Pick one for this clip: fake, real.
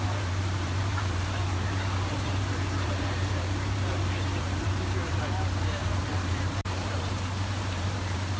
fake